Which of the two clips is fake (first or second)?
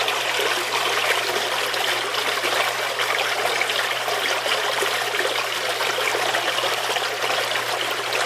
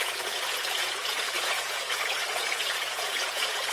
second